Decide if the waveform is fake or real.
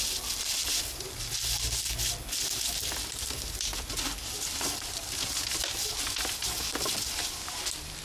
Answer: real